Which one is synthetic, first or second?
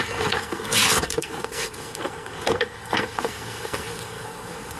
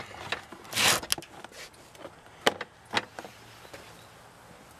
first